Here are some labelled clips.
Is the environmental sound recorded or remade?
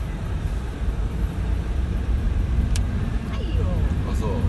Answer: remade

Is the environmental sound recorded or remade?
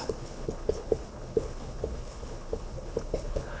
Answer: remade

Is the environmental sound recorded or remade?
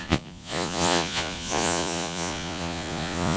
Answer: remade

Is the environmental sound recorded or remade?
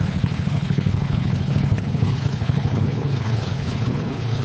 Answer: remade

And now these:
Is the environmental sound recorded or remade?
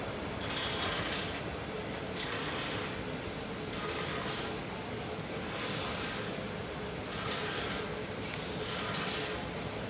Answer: recorded